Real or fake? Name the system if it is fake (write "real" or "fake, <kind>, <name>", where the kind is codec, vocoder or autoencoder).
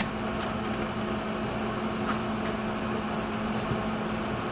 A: real